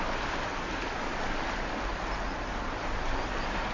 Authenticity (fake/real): real